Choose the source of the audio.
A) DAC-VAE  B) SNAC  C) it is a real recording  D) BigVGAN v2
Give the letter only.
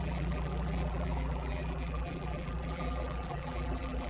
D